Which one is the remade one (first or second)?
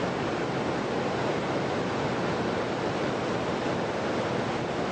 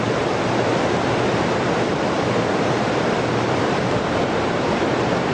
second